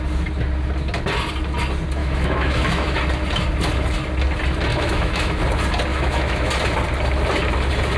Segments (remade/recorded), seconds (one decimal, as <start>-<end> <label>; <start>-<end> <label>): 0.0-2.0 recorded; 2.0-3.0 remade; 3.0-4.7 recorded; 4.7-5.4 remade; 5.4-5.9 recorded; 5.9-6.5 remade; 6.5-8.0 recorded